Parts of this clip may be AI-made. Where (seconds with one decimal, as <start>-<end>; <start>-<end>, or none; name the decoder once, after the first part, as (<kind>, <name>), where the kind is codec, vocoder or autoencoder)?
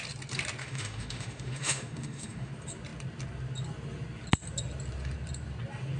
0.6-2.5 (autoencoder, DAC-VAE)